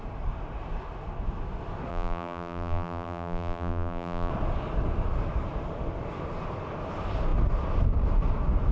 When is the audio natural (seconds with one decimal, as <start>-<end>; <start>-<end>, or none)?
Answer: 0.0-1.9; 4.3-8.7